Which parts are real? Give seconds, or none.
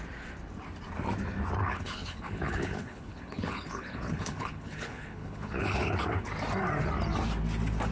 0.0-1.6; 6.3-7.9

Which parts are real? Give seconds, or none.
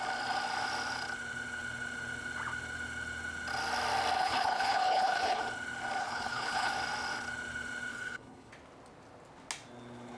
0.0-4.2; 5.4-6.0; 6.7-7.9; 8.5-10.2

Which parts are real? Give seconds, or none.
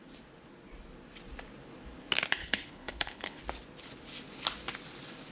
0.0-2.4; 3.4-5.3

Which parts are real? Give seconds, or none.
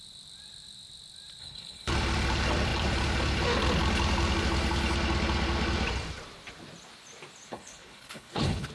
0.0-1.4; 1.9-7.5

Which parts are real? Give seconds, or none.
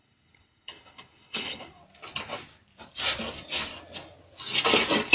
1.8-5.1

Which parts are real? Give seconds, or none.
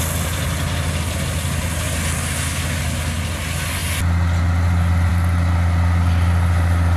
0.0-7.0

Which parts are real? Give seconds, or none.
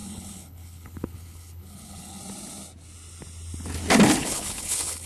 2.2-4.2